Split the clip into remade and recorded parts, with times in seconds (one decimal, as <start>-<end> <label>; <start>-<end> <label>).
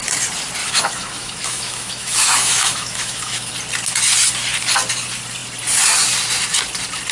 0.0-0.6 recorded; 0.6-3.5 remade; 3.5-7.1 recorded